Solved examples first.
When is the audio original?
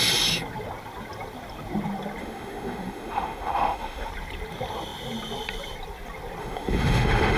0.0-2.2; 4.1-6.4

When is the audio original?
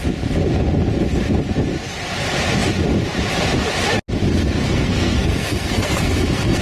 0.0-4.3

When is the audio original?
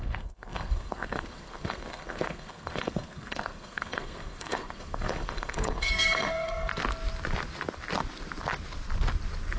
6.7-9.6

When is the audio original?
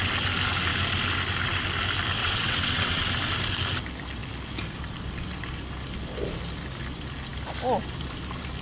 0.0-2.2; 3.0-8.6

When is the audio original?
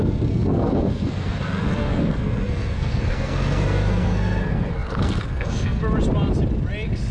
5.8-7.1